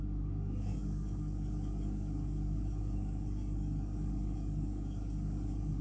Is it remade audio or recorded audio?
remade